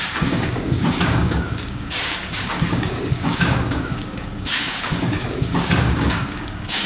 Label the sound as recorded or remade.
remade